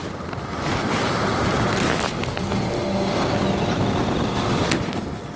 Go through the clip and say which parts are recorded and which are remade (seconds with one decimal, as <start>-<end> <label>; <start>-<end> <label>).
0.0-1.3 remade; 1.3-5.4 recorded